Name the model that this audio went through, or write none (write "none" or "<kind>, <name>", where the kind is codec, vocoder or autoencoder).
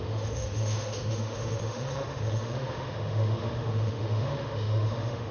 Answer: autoencoder, DAC-VAE